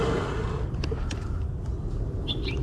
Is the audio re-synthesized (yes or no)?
no